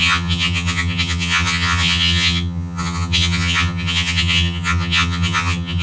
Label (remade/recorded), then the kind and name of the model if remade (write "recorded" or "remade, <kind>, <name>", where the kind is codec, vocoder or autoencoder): remade, vocoder, HiFi-GAN